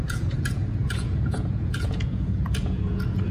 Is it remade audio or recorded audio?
remade